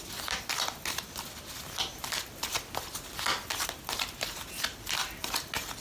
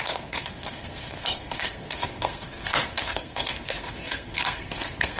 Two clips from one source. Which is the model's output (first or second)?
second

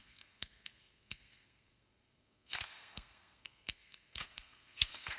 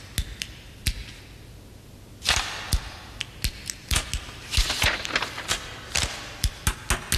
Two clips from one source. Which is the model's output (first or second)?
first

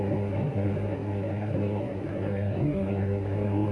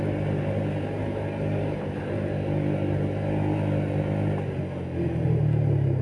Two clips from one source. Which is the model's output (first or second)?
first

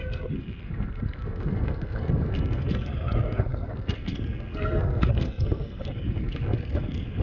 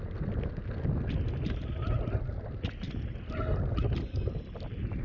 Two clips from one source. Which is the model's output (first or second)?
first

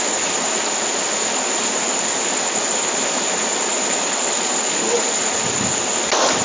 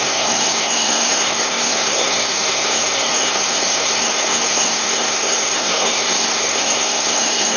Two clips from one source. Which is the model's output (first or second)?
second